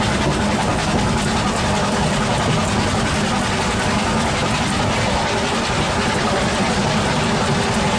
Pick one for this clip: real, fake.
real